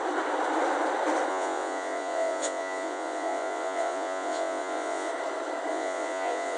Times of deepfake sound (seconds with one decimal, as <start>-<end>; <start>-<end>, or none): 1.3-5.1; 5.7-6.6